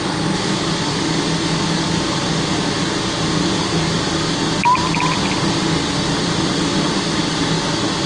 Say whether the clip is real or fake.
real